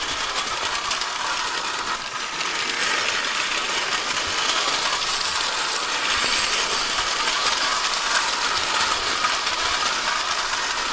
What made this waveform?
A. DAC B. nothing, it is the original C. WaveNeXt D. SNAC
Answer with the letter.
B